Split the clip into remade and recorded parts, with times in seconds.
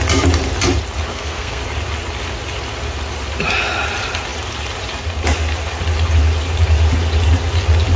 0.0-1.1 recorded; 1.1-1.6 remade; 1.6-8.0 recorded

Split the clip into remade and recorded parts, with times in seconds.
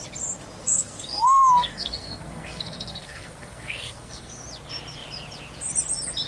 0.0-0.6 recorded; 0.6-4.4 remade; 4.4-6.3 recorded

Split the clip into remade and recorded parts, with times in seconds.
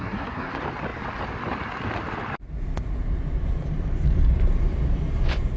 0.0-0.5 remade; 0.5-5.6 recorded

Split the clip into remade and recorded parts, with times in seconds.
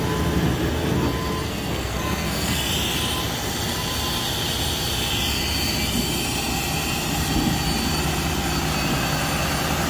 0.0-1.5 recorded; 1.5-2.7 remade; 2.7-9.9 recorded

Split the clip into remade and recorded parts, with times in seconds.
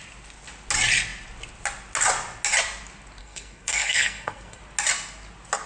0.0-3.2 recorded; 3.2-4.6 remade; 4.6-5.7 recorded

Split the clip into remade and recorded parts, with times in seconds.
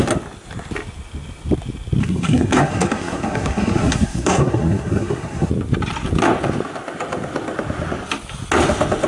0.0-2.0 recorded; 2.0-5.5 remade; 5.5-9.1 recorded